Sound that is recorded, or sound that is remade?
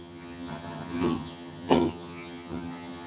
remade